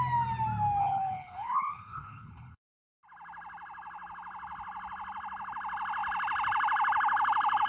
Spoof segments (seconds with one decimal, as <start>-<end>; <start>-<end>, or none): 0.8-3.0